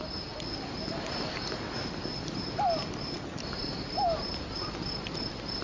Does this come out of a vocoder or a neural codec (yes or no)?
no